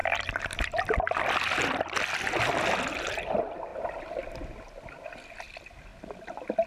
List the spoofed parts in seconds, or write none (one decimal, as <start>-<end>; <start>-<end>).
none